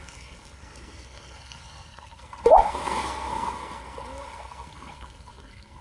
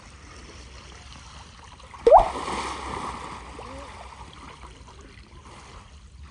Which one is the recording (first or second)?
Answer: second